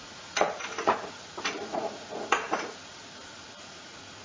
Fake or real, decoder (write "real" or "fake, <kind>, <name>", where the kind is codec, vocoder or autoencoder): fake, vocoder, Vocos